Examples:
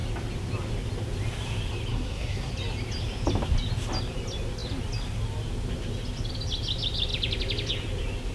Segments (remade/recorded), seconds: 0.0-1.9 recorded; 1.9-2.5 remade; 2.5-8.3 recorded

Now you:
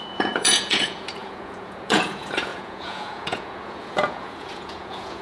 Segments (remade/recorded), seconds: 0.0-5.2 remade

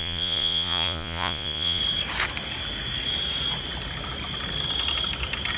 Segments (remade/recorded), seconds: 0.0-1.8 remade; 1.8-5.6 recorded

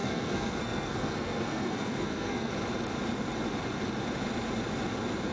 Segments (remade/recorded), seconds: 0.0-2.5 remade; 2.5-5.3 recorded

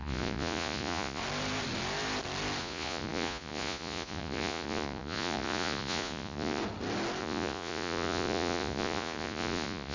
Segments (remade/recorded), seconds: 0.0-1.2 remade; 1.2-2.6 recorded; 2.6-6.6 remade; 6.6-7.2 recorded; 7.2-9.9 remade

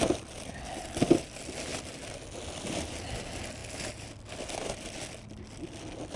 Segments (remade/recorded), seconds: 0.0-6.2 recorded

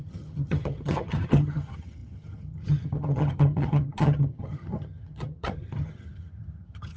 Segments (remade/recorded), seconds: 0.0-7.0 remade